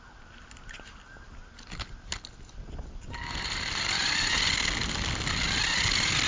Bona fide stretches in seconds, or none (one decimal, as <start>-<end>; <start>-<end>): 0.0-6.3